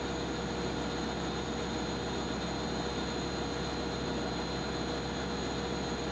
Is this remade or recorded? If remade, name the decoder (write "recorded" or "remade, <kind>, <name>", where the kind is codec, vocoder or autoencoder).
recorded